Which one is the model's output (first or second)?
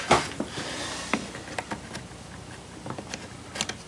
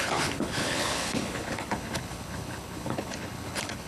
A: second